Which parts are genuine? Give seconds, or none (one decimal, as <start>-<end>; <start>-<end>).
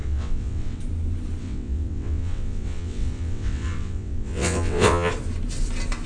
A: 0.8-1.4; 5.1-6.1